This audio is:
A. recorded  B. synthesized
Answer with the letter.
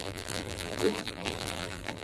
B